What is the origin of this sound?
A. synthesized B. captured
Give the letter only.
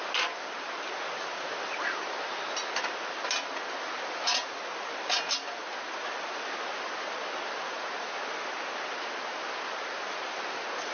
B